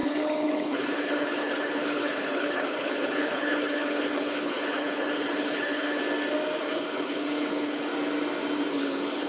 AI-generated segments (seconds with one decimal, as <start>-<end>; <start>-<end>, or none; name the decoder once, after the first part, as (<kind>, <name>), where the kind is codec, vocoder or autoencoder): 0.0-6.0 (codec, HILCodec); 6.6-7.9; 8.7-9.3